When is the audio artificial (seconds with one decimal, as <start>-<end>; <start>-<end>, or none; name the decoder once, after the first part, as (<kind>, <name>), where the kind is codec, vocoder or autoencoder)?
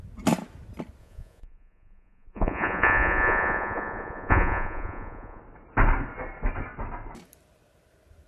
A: 1.0-5.4 (vocoder, Vocos)